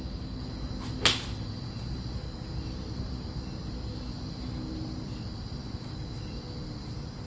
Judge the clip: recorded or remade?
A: recorded